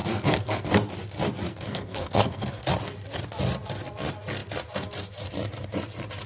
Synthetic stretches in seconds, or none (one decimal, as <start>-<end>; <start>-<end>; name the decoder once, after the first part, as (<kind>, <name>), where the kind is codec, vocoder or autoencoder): 0.0-0.7 (codec, SNAC); 1.5-2.6